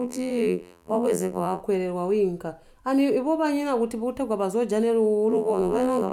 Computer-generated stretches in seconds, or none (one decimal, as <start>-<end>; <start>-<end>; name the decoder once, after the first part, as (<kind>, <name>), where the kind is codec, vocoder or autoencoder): 0.0-1.6 (vocoder, BigVGAN v2); 5.3-6.1